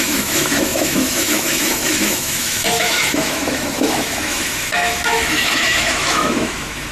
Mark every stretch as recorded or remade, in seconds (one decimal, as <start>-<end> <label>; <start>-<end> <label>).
0.0-6.9 remade